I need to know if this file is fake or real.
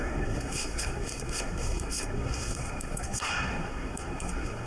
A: fake